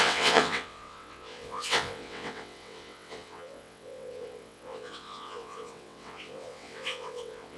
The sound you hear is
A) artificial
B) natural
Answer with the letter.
A